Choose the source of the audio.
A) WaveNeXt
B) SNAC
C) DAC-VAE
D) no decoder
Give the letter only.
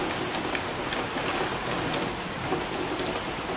D